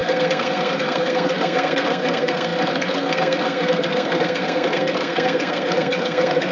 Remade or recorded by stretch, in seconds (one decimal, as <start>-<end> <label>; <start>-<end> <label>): 0.0-6.5 remade